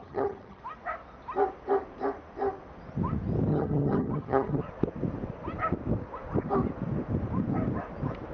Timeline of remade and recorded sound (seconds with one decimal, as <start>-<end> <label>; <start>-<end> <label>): 0.0-0.6 remade; 0.6-3.5 recorded; 3.5-4.6 remade; 4.6-8.3 recorded